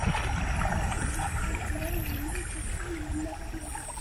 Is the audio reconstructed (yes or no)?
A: no